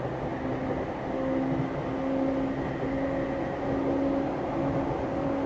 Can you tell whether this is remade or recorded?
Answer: recorded